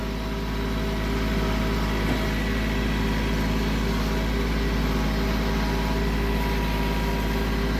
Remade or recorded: recorded